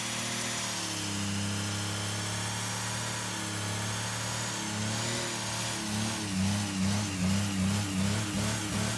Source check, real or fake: real